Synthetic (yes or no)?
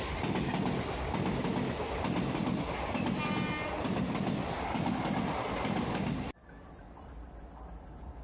no